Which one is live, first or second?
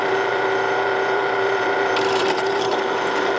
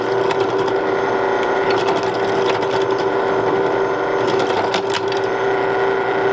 second